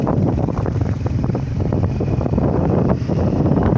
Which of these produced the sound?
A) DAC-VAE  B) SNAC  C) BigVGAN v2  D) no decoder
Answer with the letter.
C